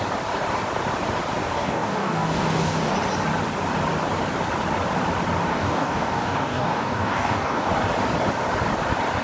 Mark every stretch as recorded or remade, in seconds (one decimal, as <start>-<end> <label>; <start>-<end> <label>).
0.0-1.4 recorded; 1.4-2.9 remade; 2.9-5.5 recorded; 5.5-7.7 remade; 7.7-9.2 recorded

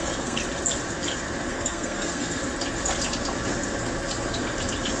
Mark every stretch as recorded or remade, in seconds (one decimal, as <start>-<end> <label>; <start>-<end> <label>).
0.0-0.4 remade; 0.4-1.5 recorded; 1.5-2.4 remade; 2.4-5.0 recorded

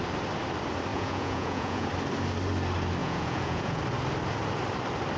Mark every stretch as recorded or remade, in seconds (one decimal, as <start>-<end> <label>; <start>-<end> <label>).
0.0-0.9 recorded; 0.9-1.9 remade; 1.9-3.0 recorded; 3.0-3.8 remade; 3.8-5.2 recorded

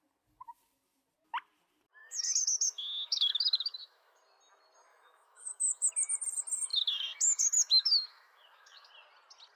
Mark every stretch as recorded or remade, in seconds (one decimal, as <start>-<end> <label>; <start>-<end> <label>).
0.0-2.0 recorded; 2.0-4.2 remade; 4.2-4.9 recorded; 4.9-5.9 remade; 5.9-6.7 recorded; 6.7-8.9 remade; 8.9-9.6 recorded

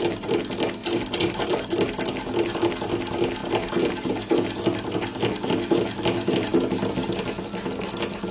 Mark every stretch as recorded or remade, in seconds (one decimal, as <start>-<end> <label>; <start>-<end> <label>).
0.0-0.8 recorded; 0.8-2.6 remade; 2.6-8.3 recorded

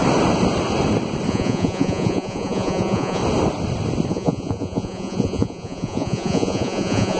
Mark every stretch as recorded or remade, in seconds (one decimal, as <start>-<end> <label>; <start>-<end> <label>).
0.0-1.3 recorded; 1.3-3.2 remade; 3.2-4.1 recorded; 4.1-7.2 remade

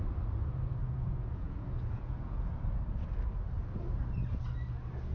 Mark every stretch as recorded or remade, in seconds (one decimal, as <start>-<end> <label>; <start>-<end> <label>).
0.0-0.8 recorded; 0.8-2.5 remade; 2.5-5.1 recorded

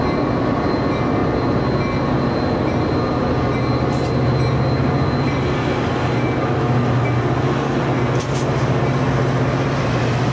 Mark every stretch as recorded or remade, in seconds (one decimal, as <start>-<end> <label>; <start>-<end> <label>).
0.0-10.3 recorded